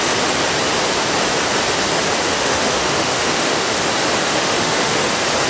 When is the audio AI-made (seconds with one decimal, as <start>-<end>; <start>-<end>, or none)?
2.3-3.8; 4.2-5.0